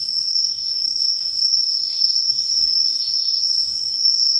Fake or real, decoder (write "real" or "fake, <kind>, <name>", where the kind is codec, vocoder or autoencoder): fake, codec, DAC